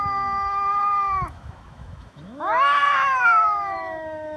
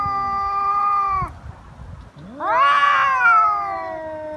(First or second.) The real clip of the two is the second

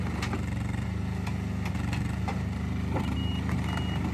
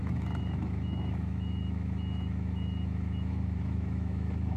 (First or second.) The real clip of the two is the first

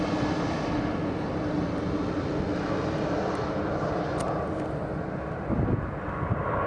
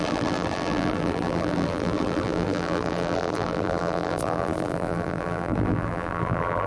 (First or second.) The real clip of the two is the first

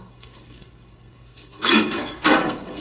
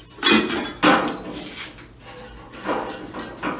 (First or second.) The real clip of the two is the second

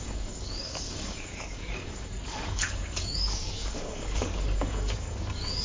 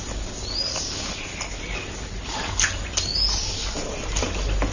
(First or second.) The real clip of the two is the second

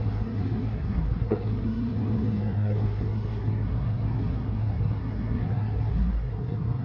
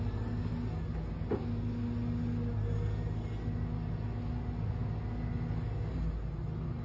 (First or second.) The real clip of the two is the second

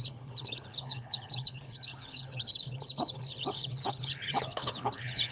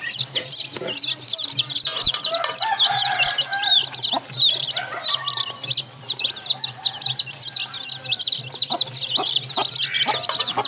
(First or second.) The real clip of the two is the second